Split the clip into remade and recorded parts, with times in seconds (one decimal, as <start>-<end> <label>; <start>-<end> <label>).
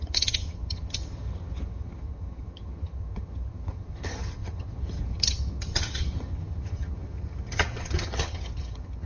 0.0-9.1 remade